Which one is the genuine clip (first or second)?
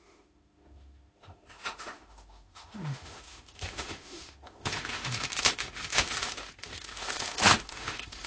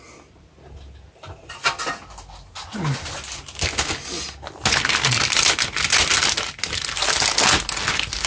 second